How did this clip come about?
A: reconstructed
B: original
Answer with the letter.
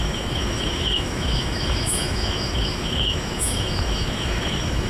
A